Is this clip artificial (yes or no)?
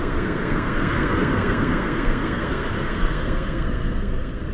yes